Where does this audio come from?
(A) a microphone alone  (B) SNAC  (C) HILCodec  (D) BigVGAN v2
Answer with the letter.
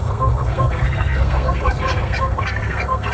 B